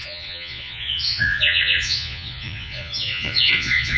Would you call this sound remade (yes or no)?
yes